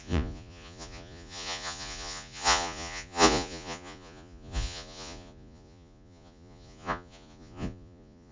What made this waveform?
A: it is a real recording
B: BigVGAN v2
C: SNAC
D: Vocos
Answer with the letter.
D